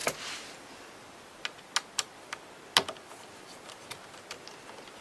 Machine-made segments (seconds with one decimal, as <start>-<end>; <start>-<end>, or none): none